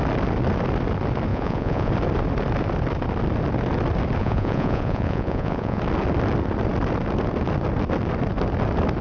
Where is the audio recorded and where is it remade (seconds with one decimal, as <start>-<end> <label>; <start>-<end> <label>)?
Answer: 0.0-1.3 recorded; 1.3-1.9 remade; 1.9-4.2 recorded; 4.2-5.8 remade; 5.8-9.0 recorded